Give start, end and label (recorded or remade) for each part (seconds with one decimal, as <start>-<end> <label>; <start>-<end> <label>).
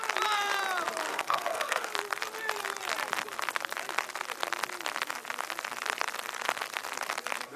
0.0-1.1 recorded; 1.1-1.9 remade; 1.9-7.6 recorded